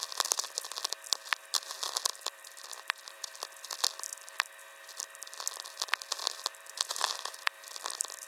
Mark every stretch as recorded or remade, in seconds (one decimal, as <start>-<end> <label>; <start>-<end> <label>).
0.0-2.1 recorded; 2.1-3.1 remade; 3.1-6.2 recorded; 6.2-7.4 remade; 7.4-8.3 recorded